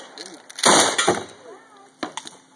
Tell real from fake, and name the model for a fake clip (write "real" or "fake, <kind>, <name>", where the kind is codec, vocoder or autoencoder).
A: real